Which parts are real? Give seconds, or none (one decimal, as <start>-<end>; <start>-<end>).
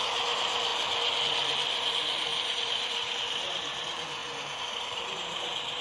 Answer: 0.0-2.3; 3.8-4.2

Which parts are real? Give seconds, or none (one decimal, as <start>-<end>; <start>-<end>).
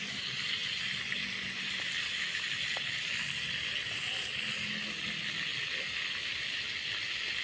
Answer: 0.0-7.4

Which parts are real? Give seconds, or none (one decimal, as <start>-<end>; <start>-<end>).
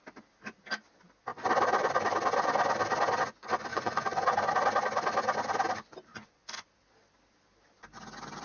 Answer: 0.0-3.7; 4.5-6.1; 6.7-8.4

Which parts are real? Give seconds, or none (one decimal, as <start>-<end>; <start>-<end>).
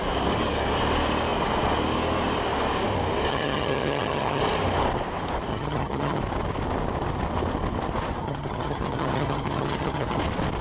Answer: 0.0-3.3; 4.4-5.5; 6.2-8.2; 10.2-10.6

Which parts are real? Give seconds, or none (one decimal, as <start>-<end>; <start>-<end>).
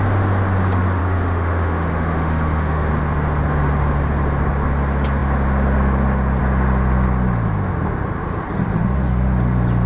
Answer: 0.0-1.0; 2.9-9.9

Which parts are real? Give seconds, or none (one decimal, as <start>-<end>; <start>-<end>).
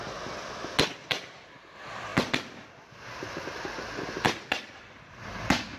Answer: 0.0-5.8